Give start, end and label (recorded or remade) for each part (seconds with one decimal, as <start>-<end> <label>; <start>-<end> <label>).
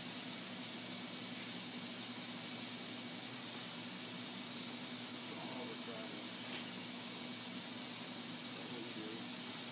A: 0.0-9.7 recorded